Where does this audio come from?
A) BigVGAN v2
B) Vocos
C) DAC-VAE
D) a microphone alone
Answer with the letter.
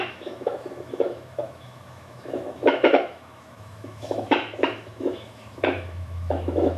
C